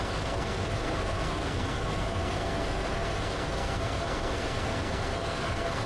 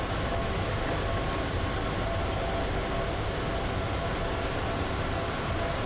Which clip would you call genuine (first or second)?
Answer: second